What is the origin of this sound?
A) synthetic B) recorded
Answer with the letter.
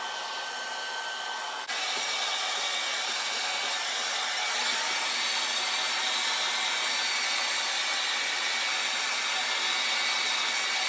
B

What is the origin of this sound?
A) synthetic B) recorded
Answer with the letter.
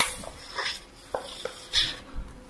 B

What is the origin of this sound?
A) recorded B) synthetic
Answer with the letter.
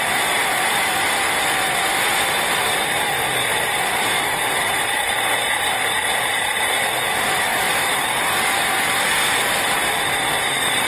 B